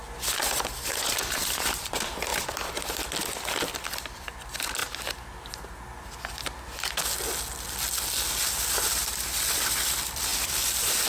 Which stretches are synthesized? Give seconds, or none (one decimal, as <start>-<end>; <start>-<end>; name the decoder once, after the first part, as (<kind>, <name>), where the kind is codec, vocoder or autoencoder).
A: 0.0-4.8 (vocoder, BigVGAN v2); 8.3-11.1